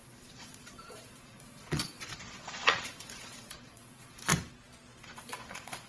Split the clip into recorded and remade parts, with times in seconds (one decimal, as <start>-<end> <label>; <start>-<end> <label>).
0.0-4.3 remade; 4.3-5.0 recorded; 5.0-5.9 remade